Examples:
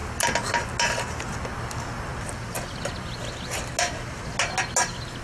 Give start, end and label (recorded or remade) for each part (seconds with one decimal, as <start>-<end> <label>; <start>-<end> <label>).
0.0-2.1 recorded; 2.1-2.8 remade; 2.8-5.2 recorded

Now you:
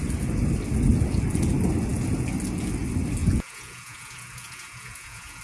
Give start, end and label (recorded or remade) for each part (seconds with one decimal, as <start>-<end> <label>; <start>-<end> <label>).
0.0-3.2 recorded; 3.2-5.4 remade

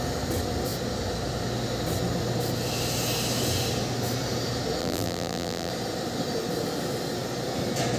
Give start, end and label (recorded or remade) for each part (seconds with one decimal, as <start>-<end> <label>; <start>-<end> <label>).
0.0-4.8 recorded; 4.8-5.7 remade; 5.7-8.0 recorded

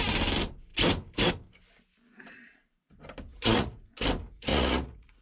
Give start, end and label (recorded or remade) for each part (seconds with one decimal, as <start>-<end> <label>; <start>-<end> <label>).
0.0-3.3 recorded; 3.3-3.9 remade; 3.9-4.5 recorded; 4.5-5.2 remade

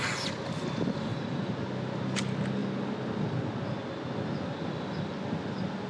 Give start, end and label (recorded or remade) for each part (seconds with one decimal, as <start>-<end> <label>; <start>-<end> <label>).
0.0-1.1 recorded; 1.1-1.6 remade; 1.6-5.9 recorded